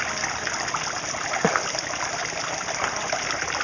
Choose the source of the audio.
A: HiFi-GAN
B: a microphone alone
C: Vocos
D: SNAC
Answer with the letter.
B